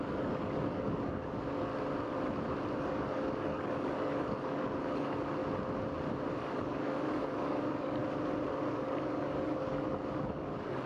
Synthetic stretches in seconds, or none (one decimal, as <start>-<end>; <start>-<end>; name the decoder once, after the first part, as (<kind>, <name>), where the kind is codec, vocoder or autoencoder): 0.0-1.7 (codec, DAC); 2.8-5.4; 6.3-8.0; 8.7-10.9